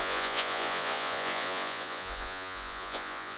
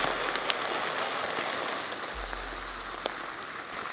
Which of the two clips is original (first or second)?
second